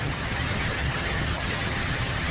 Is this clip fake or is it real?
fake